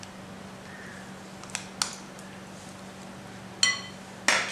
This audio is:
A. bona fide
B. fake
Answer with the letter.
A